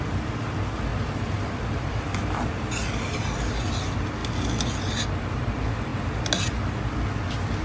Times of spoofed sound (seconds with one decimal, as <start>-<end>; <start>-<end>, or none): 0.9-2.0